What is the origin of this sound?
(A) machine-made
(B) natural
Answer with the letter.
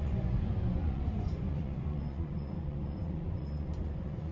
A